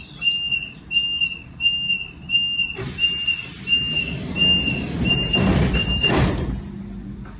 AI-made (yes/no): no